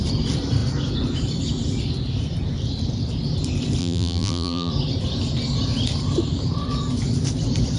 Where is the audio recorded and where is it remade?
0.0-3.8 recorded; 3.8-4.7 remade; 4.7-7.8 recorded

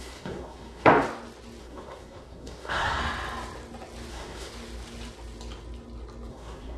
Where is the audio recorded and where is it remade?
0.0-0.9 remade; 0.9-1.6 recorded; 1.6-3.0 remade; 3.0-4.1 recorded; 4.1-4.5 remade; 4.5-6.3 recorded; 6.3-6.8 remade

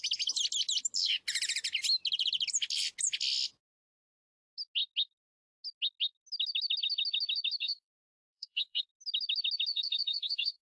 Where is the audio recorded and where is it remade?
0.0-7.6 recorded; 7.6-8.8 remade; 8.8-9.7 recorded; 9.7-10.6 remade